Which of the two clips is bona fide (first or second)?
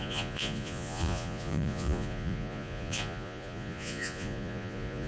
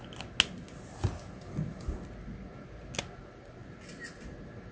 second